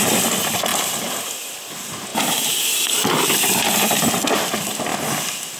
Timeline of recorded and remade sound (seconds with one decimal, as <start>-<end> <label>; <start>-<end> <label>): 0.0-4.9 remade; 4.9-5.6 recorded